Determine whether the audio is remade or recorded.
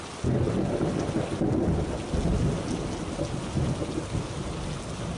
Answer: recorded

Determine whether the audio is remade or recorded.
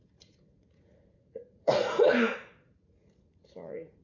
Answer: remade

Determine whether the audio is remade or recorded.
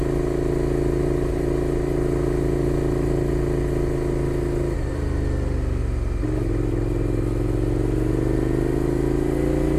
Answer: recorded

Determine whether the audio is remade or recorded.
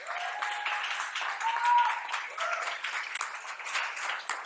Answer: recorded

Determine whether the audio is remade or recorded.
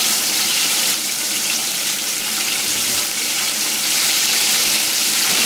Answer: remade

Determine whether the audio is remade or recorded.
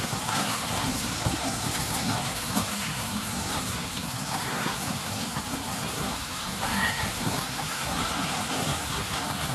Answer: remade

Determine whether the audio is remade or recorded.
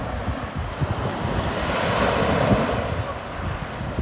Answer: recorded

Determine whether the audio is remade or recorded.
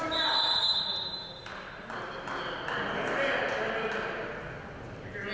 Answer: recorded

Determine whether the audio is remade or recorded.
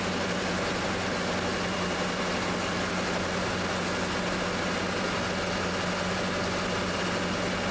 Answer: recorded